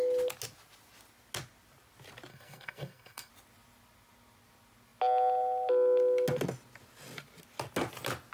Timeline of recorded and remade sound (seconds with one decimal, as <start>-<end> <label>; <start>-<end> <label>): 0.0-2.3 recorded; 2.3-3.3 remade; 3.3-8.3 recorded